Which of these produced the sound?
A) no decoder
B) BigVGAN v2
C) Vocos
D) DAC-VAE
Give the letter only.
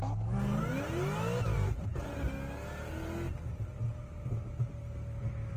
A